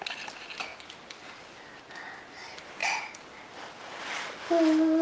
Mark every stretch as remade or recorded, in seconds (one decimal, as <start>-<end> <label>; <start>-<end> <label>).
0.0-5.0 recorded